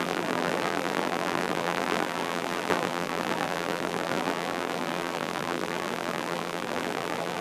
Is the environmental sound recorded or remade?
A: remade